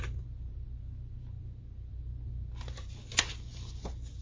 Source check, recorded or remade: recorded